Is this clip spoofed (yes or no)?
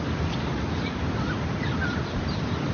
no